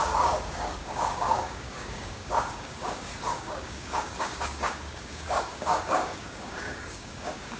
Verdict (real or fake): fake